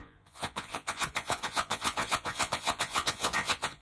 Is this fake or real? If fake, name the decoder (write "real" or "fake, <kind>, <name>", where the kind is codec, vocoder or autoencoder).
fake, vocoder, Vocos